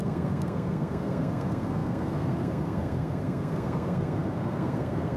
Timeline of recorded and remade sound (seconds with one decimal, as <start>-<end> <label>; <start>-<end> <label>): 0.0-5.2 remade